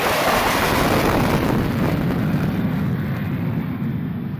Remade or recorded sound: recorded